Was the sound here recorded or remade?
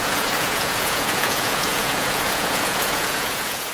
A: remade